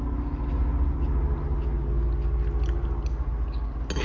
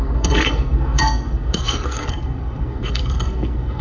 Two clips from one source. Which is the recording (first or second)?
first